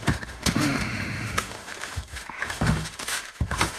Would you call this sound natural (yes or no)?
no